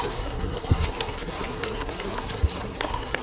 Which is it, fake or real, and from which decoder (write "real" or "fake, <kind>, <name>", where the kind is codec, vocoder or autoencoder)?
fake, codec, SNAC